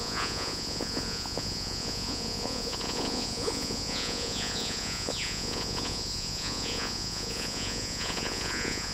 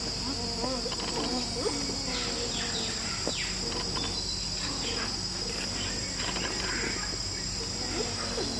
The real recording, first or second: second